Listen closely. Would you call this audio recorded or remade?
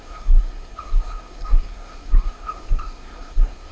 remade